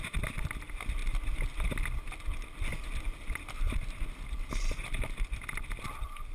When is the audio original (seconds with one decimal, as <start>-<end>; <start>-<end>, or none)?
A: 0.0-6.3